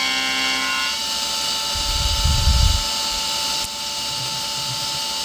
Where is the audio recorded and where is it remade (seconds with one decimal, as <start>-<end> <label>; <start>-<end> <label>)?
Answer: 0.0-5.2 recorded